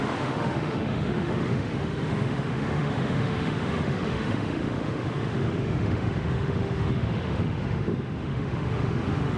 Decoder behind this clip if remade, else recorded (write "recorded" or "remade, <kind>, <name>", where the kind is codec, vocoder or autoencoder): remade, autoencoder, DAC-VAE